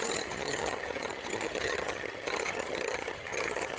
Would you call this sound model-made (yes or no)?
yes